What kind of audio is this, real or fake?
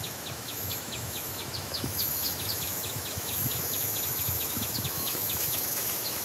fake